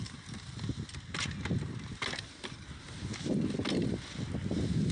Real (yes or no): yes